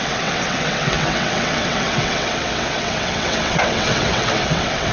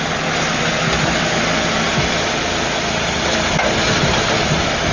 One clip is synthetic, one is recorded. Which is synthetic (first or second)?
first